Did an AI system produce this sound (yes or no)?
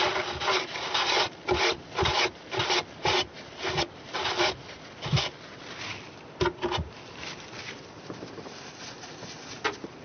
yes